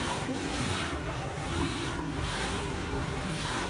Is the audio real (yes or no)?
no